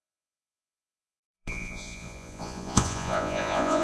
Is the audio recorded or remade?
remade